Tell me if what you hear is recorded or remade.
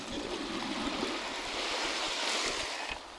recorded